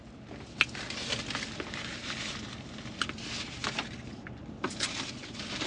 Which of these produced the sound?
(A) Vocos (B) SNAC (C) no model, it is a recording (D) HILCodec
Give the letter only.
C